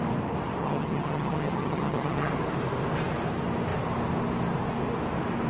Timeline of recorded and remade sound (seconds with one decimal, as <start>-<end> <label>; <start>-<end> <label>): 0.0-0.6 recorded; 0.6-2.3 remade; 2.3-5.5 recorded